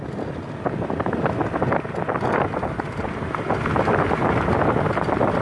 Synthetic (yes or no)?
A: no